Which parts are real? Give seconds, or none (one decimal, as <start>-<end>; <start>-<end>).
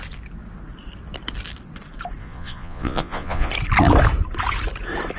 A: 0.0-2.2; 3.5-5.2